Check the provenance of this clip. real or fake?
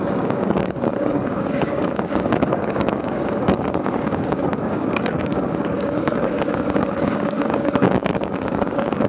fake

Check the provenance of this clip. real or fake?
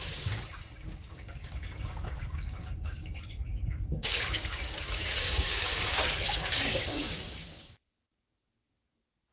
fake